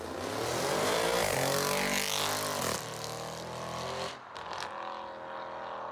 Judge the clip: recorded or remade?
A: recorded